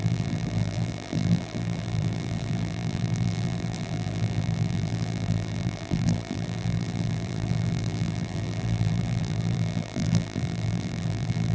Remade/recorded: remade